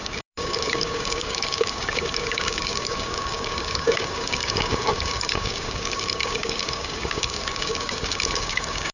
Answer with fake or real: fake